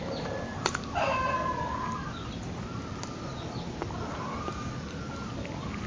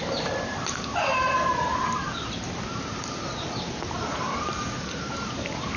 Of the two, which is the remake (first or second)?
second